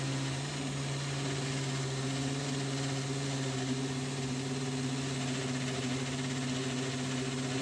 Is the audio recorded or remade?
recorded